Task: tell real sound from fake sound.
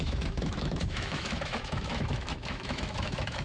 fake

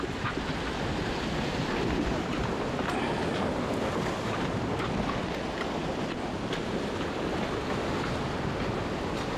real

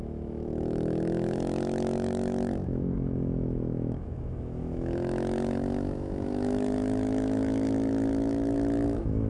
fake